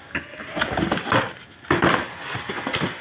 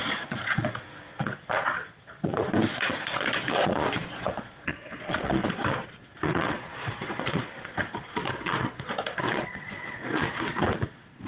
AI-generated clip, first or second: second